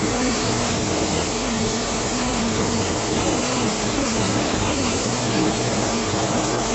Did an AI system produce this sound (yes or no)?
yes